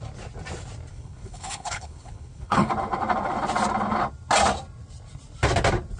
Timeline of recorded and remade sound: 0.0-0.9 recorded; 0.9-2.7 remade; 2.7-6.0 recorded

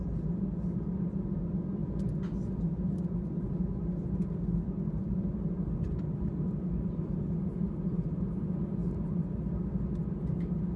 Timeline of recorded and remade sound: 0.0-10.8 recorded

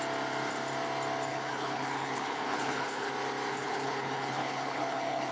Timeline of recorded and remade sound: 0.0-1.3 recorded; 1.3-3.1 remade; 3.1-3.5 recorded; 3.5-5.3 remade

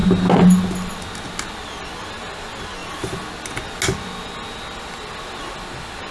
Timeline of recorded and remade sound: 0.0-6.1 recorded

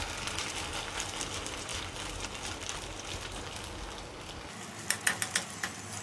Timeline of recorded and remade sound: 0.0-6.0 recorded

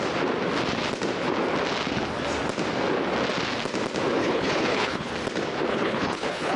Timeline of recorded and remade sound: 0.0-4.2 recorded; 4.2-5.1 remade; 5.1-5.7 recorded; 5.7-6.6 remade

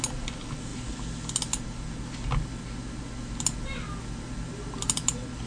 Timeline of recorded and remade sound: 0.0-5.5 recorded